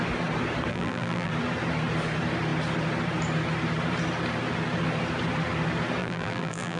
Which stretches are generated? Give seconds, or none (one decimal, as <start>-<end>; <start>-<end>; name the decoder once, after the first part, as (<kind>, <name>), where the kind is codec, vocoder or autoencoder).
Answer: 0.7-1.3 (vocoder, BigVGAN v2); 6.0-6.8